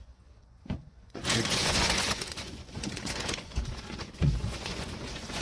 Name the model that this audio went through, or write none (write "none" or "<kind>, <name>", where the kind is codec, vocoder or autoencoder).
vocoder, Vocos